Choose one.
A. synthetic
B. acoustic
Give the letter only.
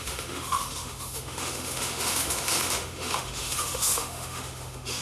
A